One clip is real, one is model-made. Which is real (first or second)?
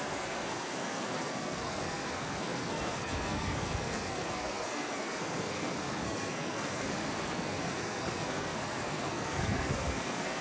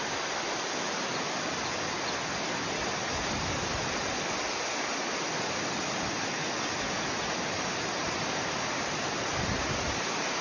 second